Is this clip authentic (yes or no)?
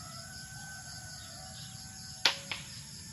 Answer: yes